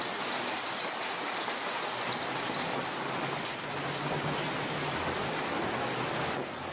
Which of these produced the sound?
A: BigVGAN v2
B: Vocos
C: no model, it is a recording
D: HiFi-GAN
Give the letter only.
C